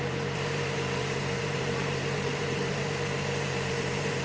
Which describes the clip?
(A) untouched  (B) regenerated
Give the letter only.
B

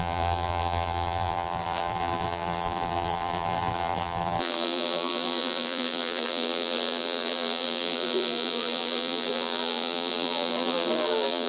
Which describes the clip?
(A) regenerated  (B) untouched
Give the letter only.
A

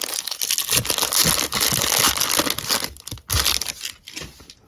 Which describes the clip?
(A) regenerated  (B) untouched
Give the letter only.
B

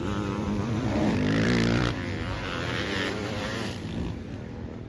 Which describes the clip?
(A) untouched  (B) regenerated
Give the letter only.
B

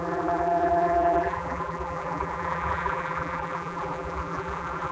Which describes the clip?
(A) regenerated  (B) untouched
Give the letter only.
A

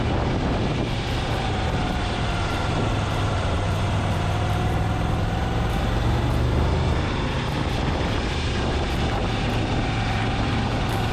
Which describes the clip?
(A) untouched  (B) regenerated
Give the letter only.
B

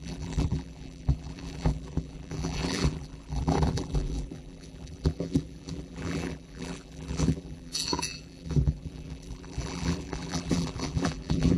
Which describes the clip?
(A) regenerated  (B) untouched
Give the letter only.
A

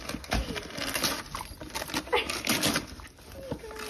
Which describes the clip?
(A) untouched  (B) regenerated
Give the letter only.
A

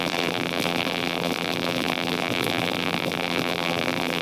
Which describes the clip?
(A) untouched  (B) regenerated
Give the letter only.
B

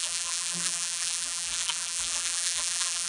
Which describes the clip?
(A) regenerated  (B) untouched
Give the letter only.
A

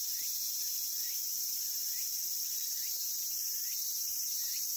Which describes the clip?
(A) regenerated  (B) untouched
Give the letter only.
A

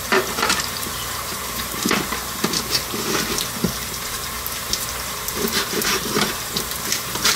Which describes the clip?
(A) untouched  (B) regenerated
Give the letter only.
B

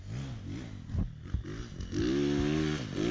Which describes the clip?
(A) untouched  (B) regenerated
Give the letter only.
A